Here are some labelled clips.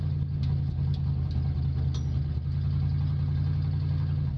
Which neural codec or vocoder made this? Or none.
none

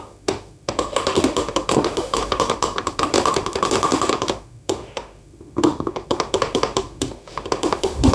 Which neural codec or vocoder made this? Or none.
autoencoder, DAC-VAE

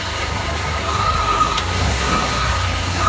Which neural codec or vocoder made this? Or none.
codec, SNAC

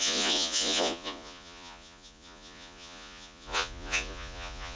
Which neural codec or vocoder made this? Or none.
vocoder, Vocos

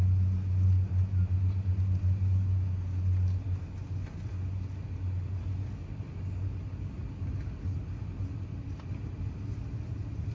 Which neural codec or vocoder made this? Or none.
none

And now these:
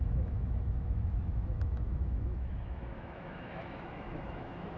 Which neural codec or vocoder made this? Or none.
autoencoder, DAC-VAE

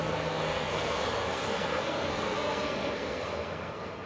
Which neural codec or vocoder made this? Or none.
codec, SNAC